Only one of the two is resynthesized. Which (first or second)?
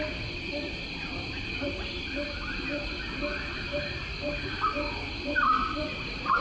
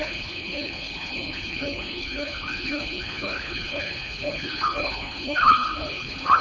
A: second